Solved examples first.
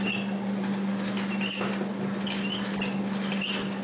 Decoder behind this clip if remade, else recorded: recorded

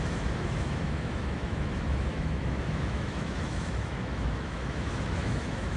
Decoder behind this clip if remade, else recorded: remade, autoencoder, DAC-VAE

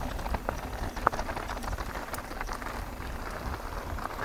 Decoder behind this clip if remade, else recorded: recorded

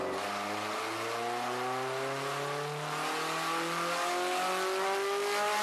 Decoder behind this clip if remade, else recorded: recorded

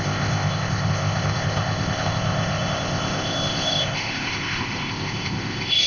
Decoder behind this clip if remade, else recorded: remade, codec, ZipCodec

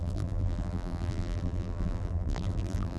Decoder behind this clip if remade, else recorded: remade, vocoder, BigVGAN v2